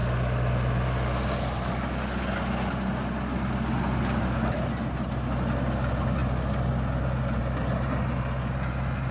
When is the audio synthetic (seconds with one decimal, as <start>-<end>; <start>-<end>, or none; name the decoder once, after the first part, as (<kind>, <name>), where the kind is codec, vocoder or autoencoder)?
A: none